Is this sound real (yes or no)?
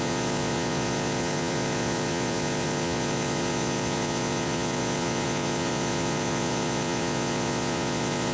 no